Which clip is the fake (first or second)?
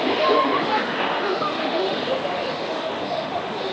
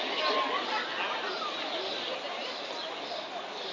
first